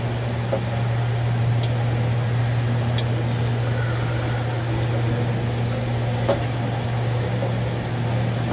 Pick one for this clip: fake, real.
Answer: real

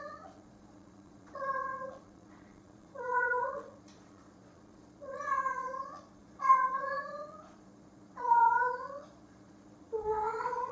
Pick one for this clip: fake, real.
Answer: fake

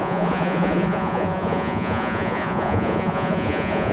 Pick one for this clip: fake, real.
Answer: fake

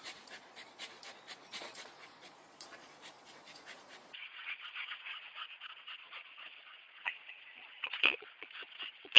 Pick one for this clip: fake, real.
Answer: fake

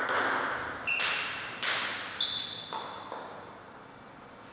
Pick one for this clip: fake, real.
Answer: real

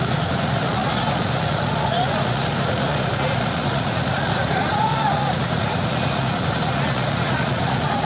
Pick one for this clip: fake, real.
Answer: fake